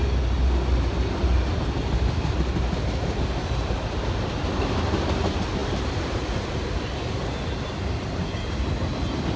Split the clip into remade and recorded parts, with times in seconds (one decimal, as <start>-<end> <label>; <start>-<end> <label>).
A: 0.0-9.4 recorded